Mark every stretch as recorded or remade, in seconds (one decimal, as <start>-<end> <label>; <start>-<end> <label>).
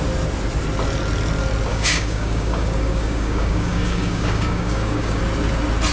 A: 0.0-1.7 recorded; 1.7-5.2 remade; 5.2-5.9 recorded